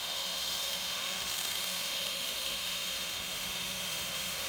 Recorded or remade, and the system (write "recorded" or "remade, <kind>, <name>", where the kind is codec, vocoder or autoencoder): remade, autoencoder, DAC-VAE